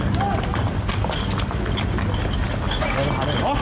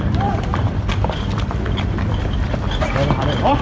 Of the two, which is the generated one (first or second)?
second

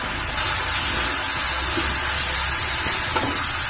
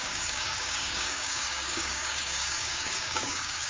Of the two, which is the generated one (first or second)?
second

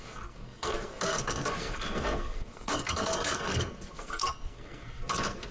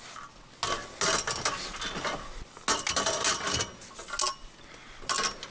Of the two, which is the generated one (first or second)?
first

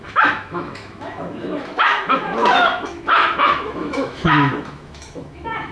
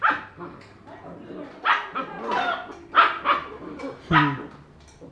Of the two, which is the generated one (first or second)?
first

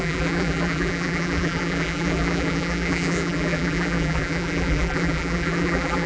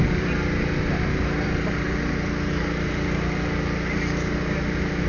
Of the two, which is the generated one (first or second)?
first